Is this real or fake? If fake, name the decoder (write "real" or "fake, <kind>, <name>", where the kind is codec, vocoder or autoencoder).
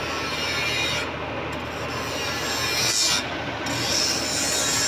real